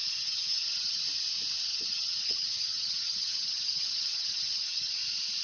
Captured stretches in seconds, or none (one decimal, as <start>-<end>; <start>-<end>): 1.0-1.7; 4.9-5.4